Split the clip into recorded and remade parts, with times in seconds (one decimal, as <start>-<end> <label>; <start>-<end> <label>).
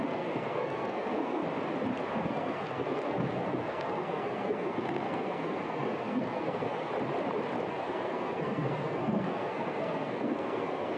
0.0-1.4 remade; 1.4-2.1 recorded; 2.1-6.9 remade; 6.9-7.7 recorded; 7.7-11.0 remade